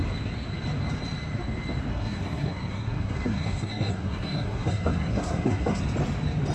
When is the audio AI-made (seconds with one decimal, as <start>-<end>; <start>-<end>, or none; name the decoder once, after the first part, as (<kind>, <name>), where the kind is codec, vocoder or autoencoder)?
1.9-5.8 (codec, SNAC)